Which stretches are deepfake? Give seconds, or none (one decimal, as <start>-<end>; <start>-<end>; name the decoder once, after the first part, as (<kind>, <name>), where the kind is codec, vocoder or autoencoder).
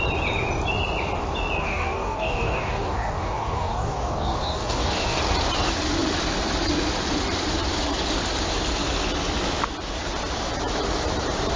1.6-5.2 (codec, DAC)